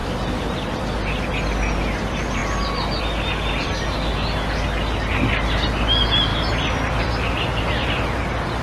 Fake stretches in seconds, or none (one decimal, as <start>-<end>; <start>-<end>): 0.0-0.7; 6.3-7.1